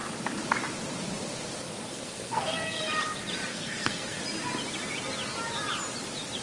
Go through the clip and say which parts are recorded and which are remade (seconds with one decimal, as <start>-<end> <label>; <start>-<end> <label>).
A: 0.0-1.9 recorded; 1.9-2.8 remade; 2.8-3.5 recorded; 3.5-4.2 remade; 4.2-6.4 recorded